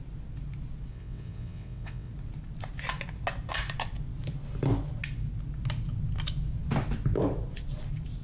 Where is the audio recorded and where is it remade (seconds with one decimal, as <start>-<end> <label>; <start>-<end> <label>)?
0.0-0.9 recorded; 0.9-2.1 remade; 2.1-8.2 recorded